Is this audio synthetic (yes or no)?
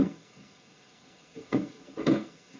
yes